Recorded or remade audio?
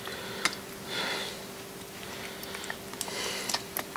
recorded